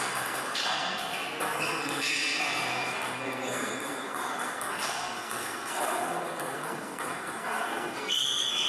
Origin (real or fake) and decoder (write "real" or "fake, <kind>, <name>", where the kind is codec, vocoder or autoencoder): fake, codec, SNAC